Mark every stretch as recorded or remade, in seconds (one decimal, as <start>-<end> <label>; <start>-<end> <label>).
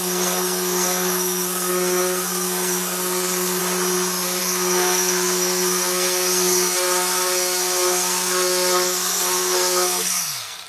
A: 0.0-3.6 remade; 3.6-4.4 recorded; 4.4-10.7 remade